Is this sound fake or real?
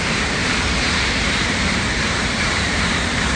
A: fake